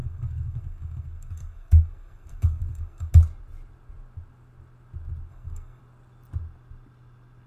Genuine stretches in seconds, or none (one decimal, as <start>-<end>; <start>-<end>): 3.1-5.3; 5.8-7.5